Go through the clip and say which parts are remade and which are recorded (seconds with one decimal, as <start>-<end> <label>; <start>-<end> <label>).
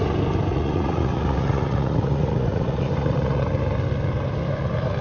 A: 0.0-0.5 recorded; 0.5-3.5 remade; 3.5-5.0 recorded